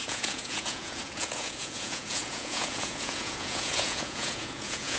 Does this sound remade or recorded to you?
remade